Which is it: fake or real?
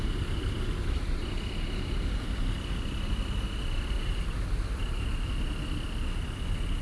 real